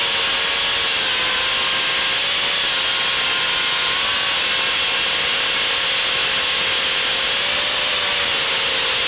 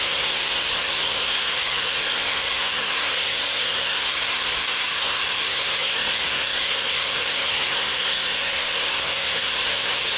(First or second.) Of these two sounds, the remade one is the second